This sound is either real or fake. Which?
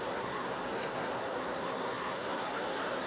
fake